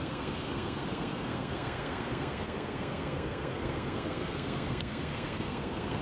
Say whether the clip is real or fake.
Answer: fake